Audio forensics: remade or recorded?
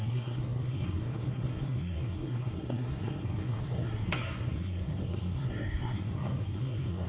remade